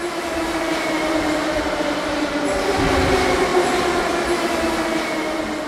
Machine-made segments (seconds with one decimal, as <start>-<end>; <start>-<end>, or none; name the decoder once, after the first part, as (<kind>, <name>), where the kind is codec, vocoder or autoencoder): none